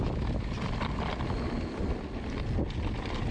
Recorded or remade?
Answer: recorded